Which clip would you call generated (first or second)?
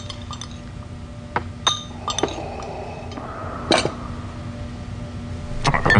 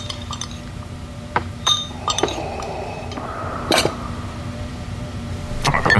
second